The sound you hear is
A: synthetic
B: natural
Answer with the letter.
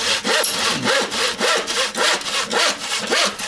B